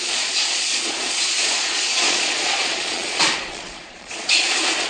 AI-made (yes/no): yes